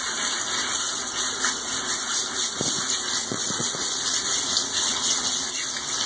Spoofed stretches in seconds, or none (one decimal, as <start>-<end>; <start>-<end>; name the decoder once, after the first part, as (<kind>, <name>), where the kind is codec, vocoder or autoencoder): 3.2-5.5 (vocoder, Vocos)